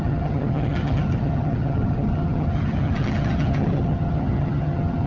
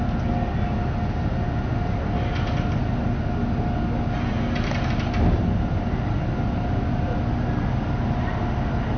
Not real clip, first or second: first